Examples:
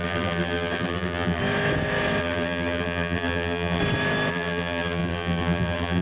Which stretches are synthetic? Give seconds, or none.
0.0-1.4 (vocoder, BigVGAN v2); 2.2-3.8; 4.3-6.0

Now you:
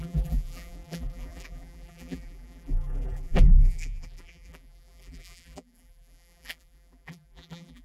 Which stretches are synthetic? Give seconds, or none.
0.0-7.8 (vocoder, BigVGAN v2)

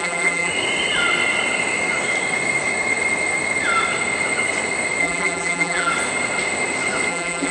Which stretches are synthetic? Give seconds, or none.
0.0-0.5 (vocoder, BigVGAN v2); 5.0-5.9; 7.1-7.5

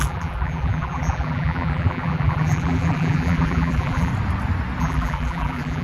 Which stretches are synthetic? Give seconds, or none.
0.0-4.1 (vocoder, BigVGAN v2); 4.8-5.8